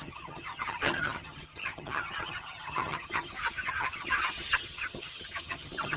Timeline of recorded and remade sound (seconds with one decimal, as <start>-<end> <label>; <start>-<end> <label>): 0.0-6.0 remade